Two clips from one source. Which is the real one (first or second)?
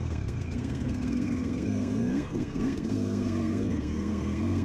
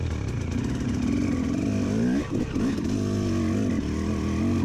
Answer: second